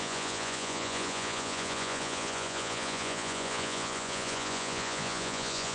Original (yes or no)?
no